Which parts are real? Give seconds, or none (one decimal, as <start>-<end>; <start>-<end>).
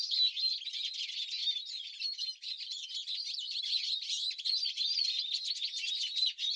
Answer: 0.0-1.4; 3.6-6.6